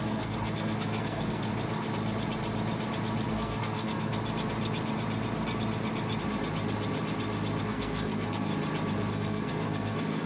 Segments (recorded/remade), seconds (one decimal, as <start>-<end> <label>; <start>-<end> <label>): 0.0-1.5 remade; 1.5-3.3 recorded; 3.3-4.1 remade; 4.1-7.6 recorded; 7.6-8.5 remade; 8.5-9.1 recorded; 9.1-10.3 remade